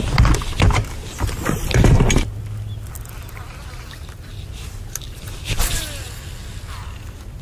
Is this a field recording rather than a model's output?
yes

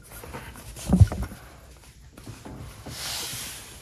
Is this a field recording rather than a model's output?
yes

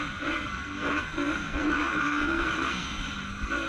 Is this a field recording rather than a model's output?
no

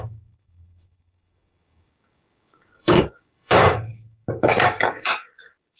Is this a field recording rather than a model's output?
no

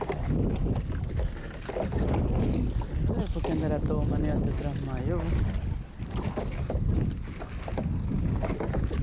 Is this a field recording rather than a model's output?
yes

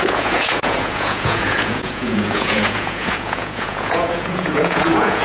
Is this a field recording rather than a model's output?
no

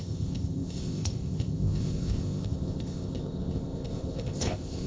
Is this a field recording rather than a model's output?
no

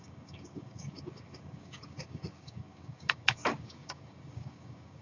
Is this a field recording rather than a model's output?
no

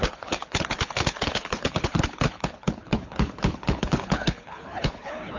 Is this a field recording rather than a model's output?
no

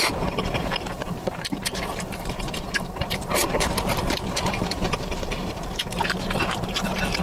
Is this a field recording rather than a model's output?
no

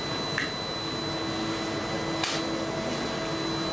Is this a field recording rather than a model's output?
yes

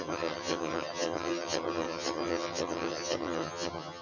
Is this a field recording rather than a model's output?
no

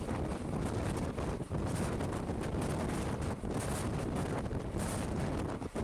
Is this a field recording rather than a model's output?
yes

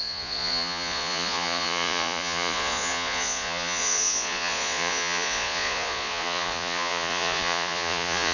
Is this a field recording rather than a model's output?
no